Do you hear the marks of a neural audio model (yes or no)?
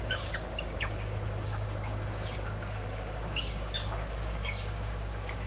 yes